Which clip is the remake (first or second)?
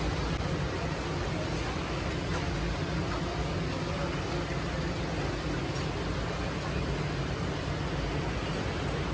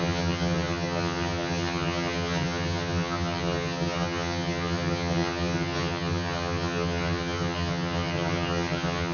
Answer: second